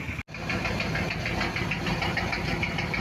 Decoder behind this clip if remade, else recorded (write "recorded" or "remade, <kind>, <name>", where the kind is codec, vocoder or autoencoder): recorded